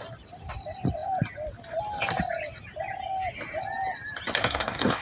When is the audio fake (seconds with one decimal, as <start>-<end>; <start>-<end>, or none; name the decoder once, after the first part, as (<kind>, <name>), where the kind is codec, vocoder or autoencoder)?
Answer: 4.4-5.0 (codec, SNAC)